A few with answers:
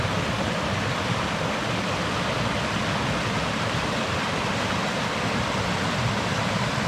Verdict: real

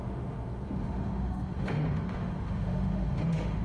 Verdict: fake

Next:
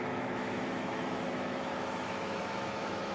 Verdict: fake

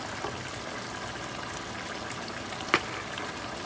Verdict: real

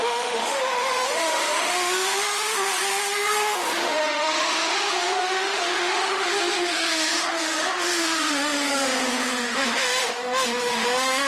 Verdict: fake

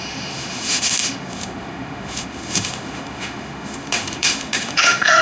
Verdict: fake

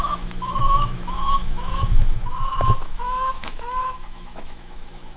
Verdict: fake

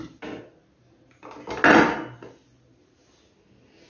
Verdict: real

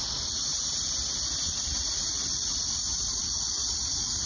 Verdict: real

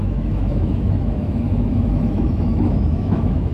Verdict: fake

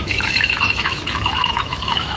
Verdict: fake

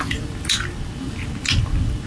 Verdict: real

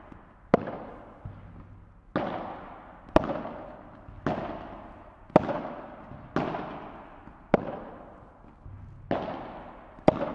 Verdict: real